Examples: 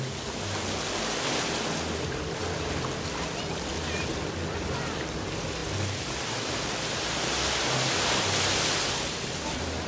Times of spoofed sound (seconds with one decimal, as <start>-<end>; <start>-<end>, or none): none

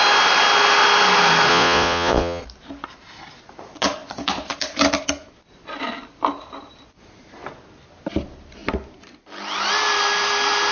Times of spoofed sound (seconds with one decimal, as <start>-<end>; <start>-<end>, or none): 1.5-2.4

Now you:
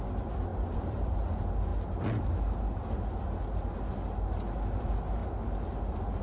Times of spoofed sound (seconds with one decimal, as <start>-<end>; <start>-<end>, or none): 0.5-1.1